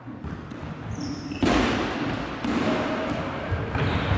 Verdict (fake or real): real